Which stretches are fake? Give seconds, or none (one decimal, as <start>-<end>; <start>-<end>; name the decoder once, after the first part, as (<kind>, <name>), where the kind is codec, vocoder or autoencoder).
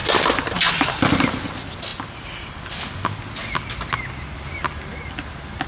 none